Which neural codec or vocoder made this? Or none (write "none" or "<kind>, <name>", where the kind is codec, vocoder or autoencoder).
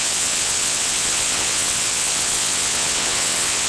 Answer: vocoder, WaveNeXt